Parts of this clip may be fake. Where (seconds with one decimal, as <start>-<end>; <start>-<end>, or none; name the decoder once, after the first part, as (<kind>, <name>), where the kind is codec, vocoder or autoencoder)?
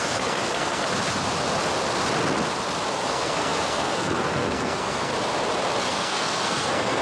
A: 0.0-0.8 (codec, SNAC); 2.9-5.1; 5.8-7.0